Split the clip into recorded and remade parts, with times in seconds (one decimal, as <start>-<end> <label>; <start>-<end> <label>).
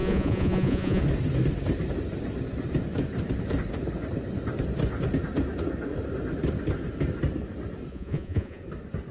0.0-1.0 remade; 1.0-7.9 recorded; 7.9-8.6 remade; 8.6-9.1 recorded